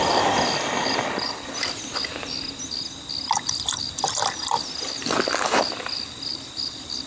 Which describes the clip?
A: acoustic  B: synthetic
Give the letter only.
A